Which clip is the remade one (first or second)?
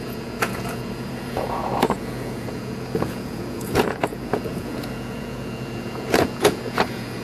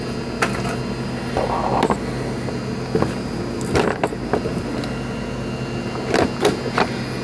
first